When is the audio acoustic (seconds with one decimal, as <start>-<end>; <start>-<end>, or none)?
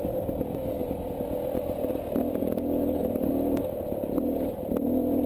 0.0-2.4; 3.3-5.3